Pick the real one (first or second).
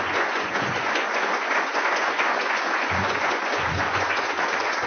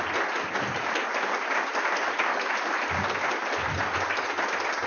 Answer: second